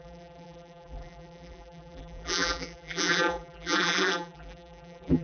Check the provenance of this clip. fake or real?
fake